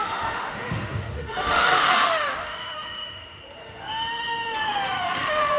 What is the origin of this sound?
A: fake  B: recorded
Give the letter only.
A